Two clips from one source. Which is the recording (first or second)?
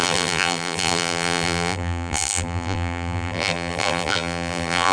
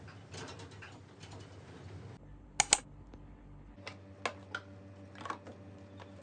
second